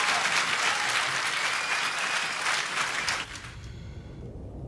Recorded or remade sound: recorded